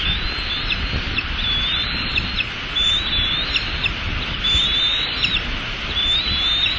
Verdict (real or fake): fake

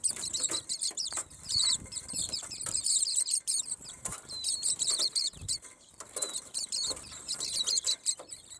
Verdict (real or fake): fake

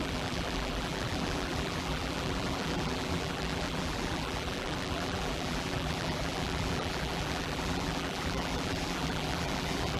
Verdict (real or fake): fake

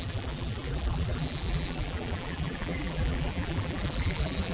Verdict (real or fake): fake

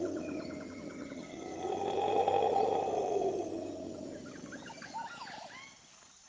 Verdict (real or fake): fake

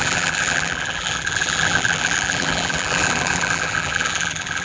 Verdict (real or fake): fake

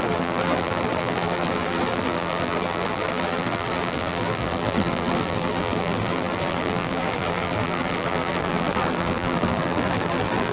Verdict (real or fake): fake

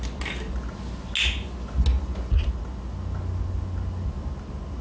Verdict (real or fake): real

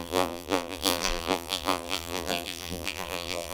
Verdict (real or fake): fake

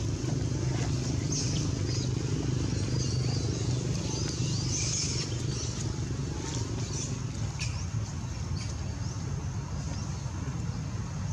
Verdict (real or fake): real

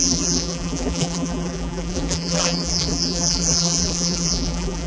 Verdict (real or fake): fake